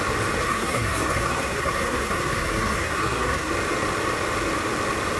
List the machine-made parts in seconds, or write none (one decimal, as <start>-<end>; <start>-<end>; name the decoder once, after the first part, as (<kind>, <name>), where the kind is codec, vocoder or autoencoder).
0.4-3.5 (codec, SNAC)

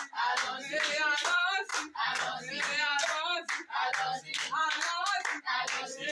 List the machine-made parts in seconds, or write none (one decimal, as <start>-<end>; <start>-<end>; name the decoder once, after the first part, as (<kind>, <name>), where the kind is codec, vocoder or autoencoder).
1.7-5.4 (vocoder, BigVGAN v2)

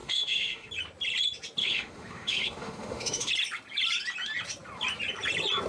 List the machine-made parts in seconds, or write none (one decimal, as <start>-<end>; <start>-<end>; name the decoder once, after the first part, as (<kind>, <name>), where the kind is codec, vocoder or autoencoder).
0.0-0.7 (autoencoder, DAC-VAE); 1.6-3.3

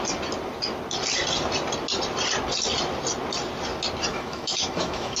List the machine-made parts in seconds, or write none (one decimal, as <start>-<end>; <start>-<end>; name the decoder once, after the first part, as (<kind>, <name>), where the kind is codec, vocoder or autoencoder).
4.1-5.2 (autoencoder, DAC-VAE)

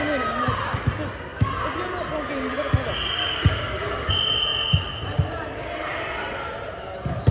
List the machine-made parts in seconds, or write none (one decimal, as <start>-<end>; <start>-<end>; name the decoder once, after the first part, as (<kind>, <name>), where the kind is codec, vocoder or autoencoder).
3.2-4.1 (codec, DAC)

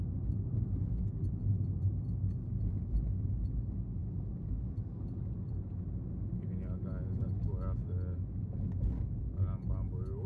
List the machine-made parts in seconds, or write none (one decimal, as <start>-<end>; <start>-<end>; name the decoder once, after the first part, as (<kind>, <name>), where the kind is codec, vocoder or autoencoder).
none

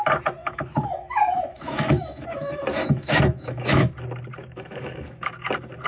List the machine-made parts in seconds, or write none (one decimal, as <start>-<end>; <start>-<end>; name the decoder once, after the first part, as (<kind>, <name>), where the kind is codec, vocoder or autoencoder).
0.4-3.9 (autoencoder, DAC-VAE); 4.4-5.3